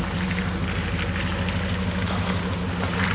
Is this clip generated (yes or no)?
no